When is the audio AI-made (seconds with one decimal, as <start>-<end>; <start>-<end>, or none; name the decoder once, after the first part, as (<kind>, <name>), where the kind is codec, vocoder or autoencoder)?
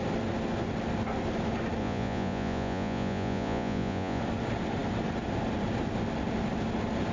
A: 1.8-4.2 (vocoder, Vocos)